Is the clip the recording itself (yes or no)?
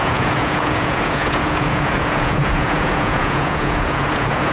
no